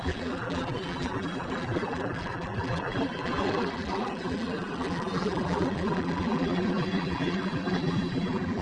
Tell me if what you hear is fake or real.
fake